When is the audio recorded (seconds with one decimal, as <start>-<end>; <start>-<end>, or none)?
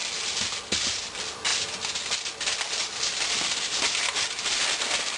0.0-5.2